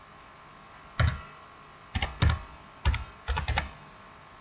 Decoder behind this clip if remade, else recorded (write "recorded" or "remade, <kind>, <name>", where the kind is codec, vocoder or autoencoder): recorded